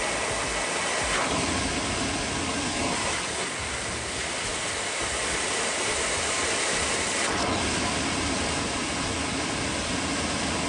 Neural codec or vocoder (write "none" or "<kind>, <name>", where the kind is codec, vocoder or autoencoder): none